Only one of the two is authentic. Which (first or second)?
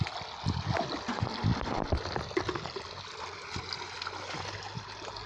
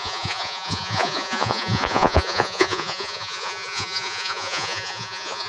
first